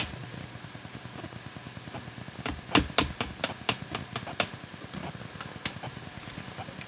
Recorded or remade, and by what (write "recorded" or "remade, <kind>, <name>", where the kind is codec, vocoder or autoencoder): recorded